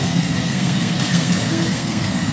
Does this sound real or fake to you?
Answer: fake